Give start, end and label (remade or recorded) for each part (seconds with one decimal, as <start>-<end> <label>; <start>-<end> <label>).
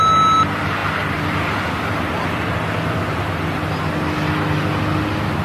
0.0-5.4 recorded